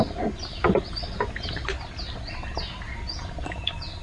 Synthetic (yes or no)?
no